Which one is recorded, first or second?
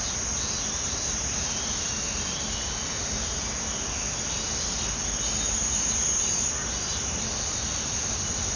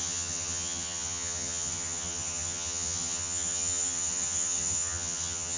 first